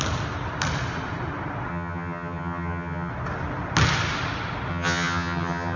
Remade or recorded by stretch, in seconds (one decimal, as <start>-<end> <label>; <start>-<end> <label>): 0.0-1.7 recorded; 1.7-3.1 remade; 3.1-4.7 recorded; 4.7-5.8 remade